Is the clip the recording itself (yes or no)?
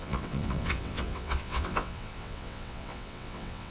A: no